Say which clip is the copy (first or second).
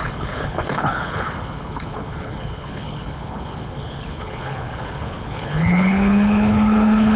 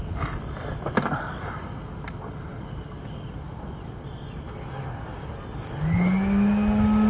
first